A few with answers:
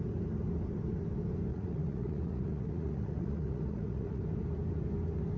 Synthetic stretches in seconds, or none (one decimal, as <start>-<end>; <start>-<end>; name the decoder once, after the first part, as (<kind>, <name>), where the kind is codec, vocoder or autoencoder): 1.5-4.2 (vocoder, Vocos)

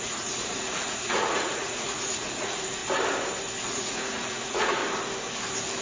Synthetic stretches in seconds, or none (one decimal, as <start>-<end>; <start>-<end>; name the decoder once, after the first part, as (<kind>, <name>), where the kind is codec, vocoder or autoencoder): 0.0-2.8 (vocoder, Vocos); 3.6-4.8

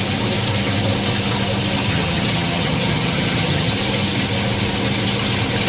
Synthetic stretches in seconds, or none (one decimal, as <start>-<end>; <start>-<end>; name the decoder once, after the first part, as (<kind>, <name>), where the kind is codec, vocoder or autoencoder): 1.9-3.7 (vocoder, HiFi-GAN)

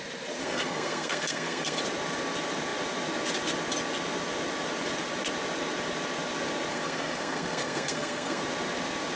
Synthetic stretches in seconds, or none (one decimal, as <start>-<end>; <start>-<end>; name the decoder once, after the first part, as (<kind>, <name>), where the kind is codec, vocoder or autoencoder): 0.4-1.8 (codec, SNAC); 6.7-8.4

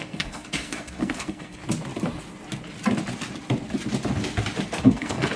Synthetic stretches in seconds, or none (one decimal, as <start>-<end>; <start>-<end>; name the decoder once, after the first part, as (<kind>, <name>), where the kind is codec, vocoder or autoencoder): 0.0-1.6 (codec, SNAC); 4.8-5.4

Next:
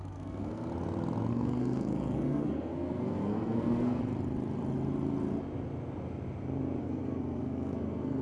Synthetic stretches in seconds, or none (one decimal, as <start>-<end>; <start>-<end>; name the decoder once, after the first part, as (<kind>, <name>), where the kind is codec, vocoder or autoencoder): 0.0-0.7 (codec, SNAC); 1.3-4.0; 6.8-8.2

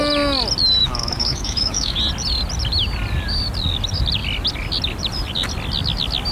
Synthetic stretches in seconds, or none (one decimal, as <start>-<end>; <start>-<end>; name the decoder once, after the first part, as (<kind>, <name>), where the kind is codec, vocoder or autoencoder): 0.8-2.0 (autoencoder, DAC-VAE)

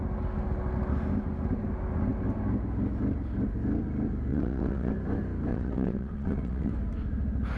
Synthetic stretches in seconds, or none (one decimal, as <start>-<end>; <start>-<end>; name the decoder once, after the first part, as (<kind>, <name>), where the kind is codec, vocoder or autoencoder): 4.3-4.9 (vocoder, WaveNeXt); 5.5-6.7